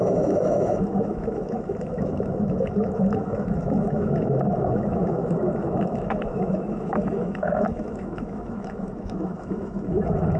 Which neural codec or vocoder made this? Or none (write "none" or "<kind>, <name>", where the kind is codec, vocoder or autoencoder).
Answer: autoencoder, DAC-VAE